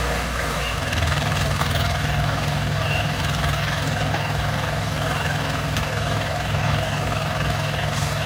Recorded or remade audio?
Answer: remade